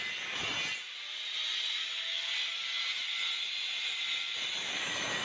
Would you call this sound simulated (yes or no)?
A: no